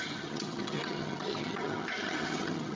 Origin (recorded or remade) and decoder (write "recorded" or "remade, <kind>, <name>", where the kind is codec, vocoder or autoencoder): remade, vocoder, HiFi-GAN